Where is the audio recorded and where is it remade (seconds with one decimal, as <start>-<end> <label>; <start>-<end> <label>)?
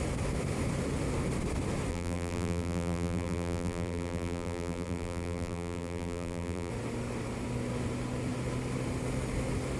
0.0-1.9 recorded; 1.9-6.7 remade; 6.7-9.8 recorded